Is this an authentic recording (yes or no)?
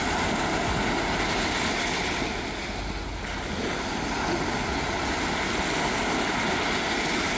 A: yes